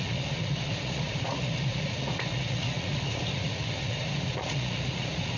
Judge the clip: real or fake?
fake